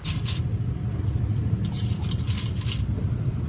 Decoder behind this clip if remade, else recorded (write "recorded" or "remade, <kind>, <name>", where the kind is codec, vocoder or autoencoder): recorded